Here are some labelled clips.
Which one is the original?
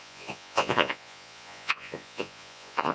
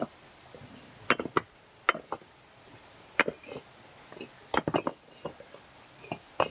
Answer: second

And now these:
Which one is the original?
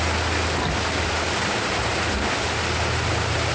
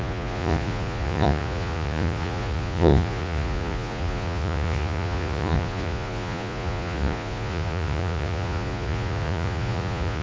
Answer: first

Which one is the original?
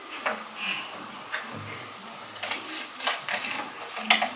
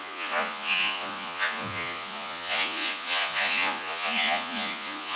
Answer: first